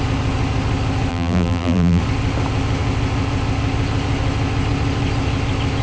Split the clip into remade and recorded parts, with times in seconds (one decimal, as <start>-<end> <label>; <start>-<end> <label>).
0.0-1.1 recorded; 1.1-2.0 remade; 2.0-5.8 recorded